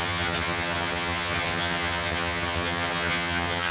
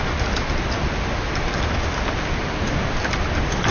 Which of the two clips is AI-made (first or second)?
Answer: first